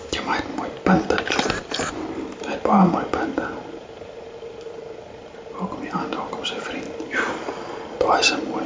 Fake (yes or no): no